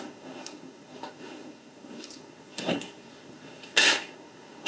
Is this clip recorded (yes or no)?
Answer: no